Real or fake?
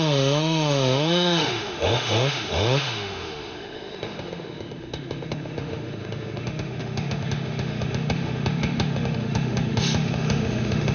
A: fake